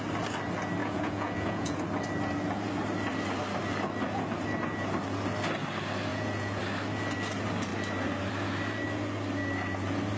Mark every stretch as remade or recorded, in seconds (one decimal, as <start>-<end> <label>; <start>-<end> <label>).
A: 0.0-0.8 recorded; 0.8-1.8 remade; 1.8-6.1 recorded; 6.1-6.6 remade; 6.6-10.2 recorded